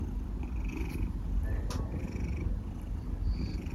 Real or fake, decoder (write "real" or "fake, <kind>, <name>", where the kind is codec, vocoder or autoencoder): real